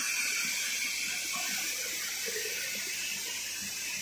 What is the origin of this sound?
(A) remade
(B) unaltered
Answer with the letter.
B